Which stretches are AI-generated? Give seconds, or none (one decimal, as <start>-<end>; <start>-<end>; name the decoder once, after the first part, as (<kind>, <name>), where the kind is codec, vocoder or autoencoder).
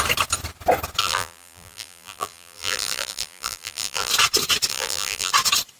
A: 1.0-4.1 (vocoder, BigVGAN v2); 4.7-5.3